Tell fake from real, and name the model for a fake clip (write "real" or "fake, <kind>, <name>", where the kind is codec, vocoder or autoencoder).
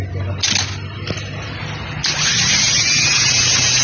real